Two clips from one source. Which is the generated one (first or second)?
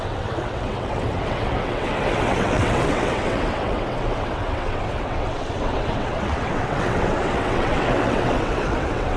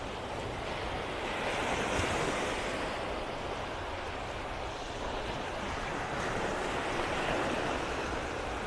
first